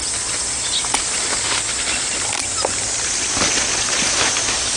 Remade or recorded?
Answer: recorded